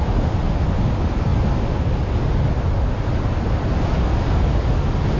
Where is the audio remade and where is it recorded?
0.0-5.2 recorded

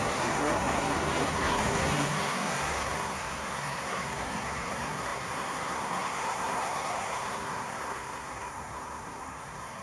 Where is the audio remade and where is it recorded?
0.0-9.8 remade